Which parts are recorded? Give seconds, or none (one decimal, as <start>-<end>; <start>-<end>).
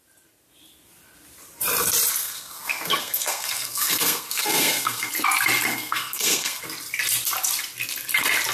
0.0-2.2; 5.1-5.7; 6.6-8.5